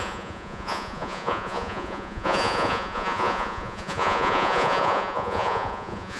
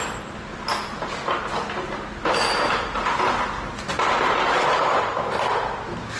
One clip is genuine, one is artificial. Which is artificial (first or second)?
first